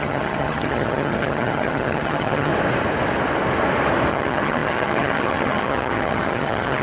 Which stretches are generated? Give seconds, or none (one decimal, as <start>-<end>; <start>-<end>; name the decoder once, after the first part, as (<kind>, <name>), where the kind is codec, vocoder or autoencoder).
0.0-2.5 (vocoder, HiFi-GAN); 4.1-6.8